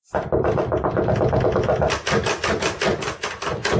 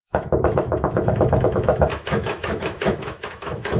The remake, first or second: second